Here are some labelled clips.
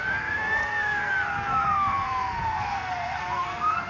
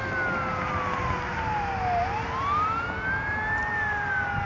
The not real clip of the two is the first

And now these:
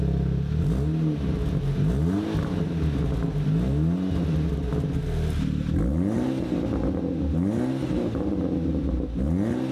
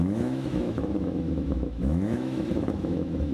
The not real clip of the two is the second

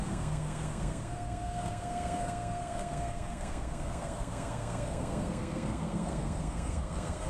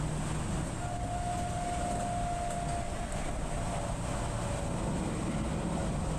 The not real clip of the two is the first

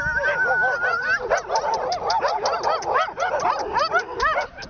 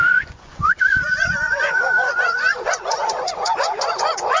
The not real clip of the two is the second